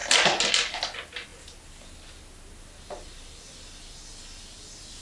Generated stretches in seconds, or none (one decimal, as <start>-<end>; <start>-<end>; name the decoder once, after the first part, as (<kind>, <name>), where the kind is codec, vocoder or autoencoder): none